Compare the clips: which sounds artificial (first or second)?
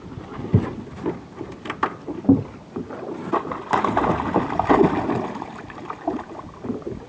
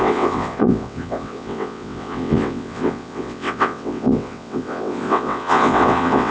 second